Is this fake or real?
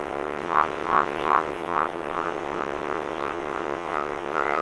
fake